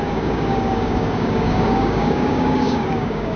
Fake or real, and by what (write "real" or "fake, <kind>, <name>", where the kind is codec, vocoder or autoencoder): fake, codec, DAC